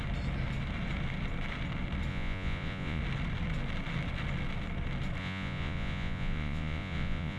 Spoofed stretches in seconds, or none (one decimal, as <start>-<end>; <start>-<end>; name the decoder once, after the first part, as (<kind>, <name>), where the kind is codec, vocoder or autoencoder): 2.1-3.0 (vocoder, Vocos); 5.2-7.4